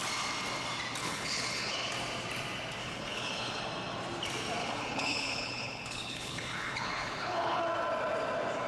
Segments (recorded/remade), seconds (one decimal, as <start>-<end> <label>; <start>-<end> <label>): 0.0-1.0 recorded; 1.0-1.9 remade; 1.9-2.8 recorded; 2.8-3.6 remade; 3.6-4.6 recorded; 4.6-7.6 remade; 7.6-8.7 recorded